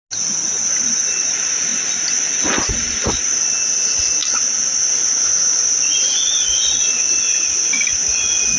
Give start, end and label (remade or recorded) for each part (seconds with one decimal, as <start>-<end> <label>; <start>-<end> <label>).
0.0-8.6 recorded